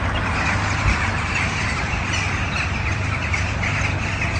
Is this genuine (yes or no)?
yes